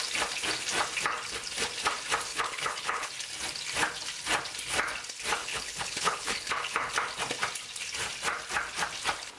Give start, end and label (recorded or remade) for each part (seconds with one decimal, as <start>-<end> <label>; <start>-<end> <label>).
0.0-2.3 recorded; 2.3-3.1 remade; 3.1-5.4 recorded; 5.4-6.9 remade; 6.9-9.4 recorded